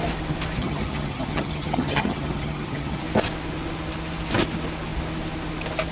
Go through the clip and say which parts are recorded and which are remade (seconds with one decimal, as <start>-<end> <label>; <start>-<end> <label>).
0.0-0.6 recorded; 0.6-3.0 remade; 3.0-5.9 recorded